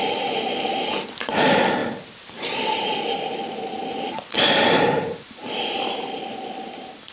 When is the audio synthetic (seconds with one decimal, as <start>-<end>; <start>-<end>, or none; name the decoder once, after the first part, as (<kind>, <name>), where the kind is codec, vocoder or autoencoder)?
0.0-3.8 (vocoder, BigVGAN v2); 5.3-7.1